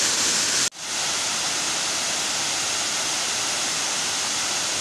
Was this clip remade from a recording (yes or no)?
no